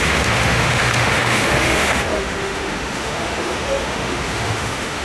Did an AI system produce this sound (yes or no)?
yes